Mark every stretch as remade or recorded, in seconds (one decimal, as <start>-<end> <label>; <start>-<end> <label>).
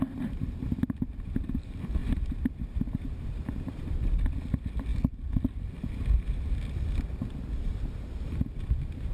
0.0-2.0 remade; 2.0-2.5 recorded; 2.5-4.9 remade; 4.9-7.1 recorded; 7.1-9.1 remade